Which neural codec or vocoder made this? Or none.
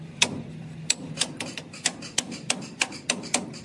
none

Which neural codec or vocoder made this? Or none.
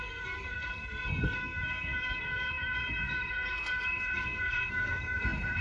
codec, SNAC